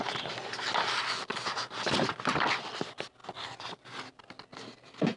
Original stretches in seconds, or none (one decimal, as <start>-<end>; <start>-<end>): 0.0-5.2